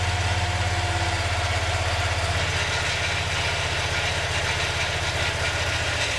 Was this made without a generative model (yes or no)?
yes